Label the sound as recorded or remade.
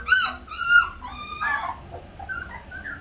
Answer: recorded